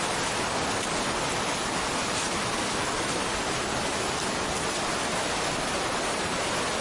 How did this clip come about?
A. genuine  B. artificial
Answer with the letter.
A